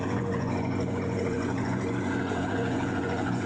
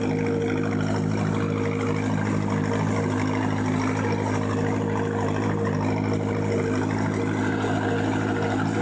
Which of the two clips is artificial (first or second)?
first